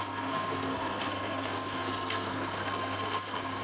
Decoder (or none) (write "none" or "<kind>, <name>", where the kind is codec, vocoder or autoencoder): codec, SNAC